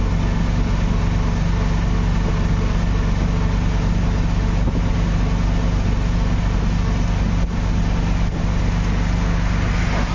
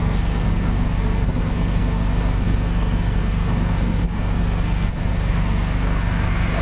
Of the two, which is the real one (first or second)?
first